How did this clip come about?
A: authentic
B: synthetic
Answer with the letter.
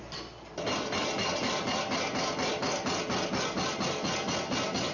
A